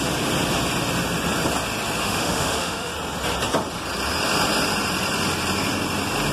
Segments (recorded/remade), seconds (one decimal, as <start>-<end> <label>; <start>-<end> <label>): 0.0-2.0 recorded; 2.0-2.9 remade; 2.9-6.3 recorded